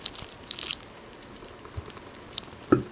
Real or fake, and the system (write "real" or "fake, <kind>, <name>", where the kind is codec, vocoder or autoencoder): real